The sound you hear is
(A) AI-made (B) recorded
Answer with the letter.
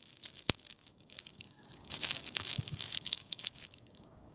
A